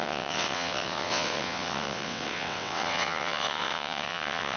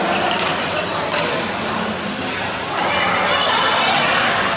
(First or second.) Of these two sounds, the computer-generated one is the first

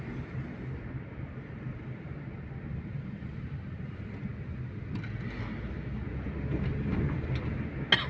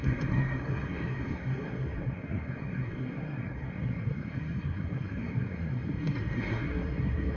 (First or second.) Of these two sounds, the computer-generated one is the second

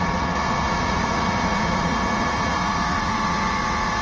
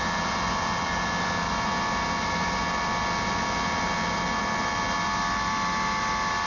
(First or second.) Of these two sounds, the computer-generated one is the first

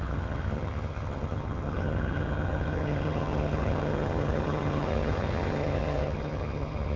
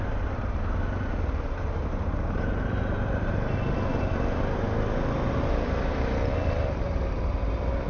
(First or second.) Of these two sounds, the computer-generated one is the first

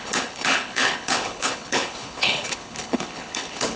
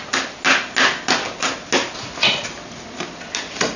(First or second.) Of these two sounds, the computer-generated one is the first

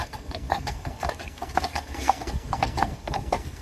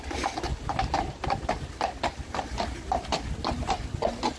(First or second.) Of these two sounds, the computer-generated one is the first